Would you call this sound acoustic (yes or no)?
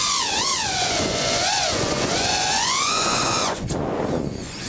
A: no